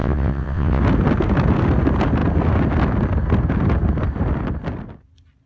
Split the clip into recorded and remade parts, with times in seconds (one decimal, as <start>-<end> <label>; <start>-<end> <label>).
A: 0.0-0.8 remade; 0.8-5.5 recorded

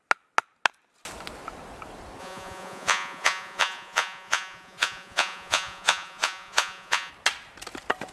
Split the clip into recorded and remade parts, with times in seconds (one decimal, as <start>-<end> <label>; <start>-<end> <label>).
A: 0.0-2.2 recorded; 2.2-7.1 remade; 7.1-8.1 recorded

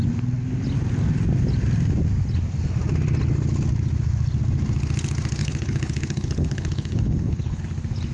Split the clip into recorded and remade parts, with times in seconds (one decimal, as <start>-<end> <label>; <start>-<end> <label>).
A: 0.0-5.4 recorded; 5.4-7.6 remade; 7.6-8.1 recorded

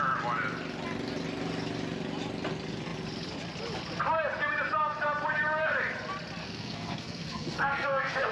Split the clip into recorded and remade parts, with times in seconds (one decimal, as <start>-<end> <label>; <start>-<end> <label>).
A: 0.0-6.4 recorded; 6.4-8.3 remade

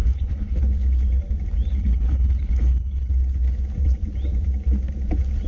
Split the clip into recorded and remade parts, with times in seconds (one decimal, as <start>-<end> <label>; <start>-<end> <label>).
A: 0.0-0.6 remade; 0.6-1.7 recorded; 1.7-3.1 remade; 3.1-5.5 recorded